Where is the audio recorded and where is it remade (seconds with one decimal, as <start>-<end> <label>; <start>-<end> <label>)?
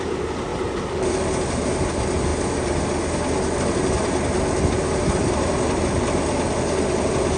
0.0-7.4 recorded